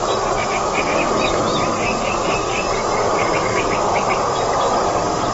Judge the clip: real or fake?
real